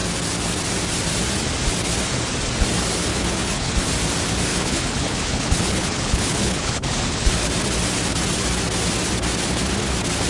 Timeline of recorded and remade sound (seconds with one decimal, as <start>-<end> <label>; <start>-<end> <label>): 0.0-3.1 recorded; 3.1-3.7 remade; 3.7-4.5 recorded; 4.5-7.5 remade; 7.5-10.3 recorded